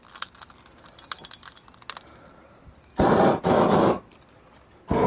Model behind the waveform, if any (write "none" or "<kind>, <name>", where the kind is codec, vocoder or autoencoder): none